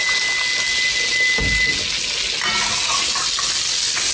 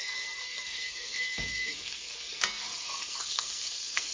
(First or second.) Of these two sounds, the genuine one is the first